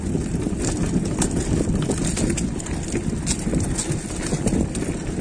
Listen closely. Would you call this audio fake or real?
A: real